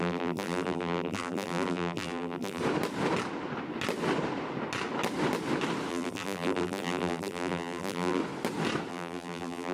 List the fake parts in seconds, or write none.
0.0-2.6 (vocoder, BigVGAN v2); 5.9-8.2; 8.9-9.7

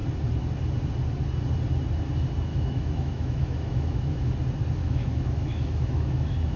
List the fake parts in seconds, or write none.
2.5-4.3 (autoencoder, DAC-VAE); 4.8-6.6

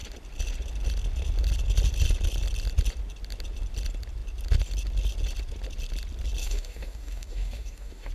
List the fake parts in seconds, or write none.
6.4-8.1 (codec, DAC)

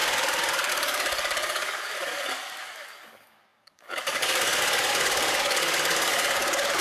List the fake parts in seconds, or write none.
0.0-6.8 (codec, DAC)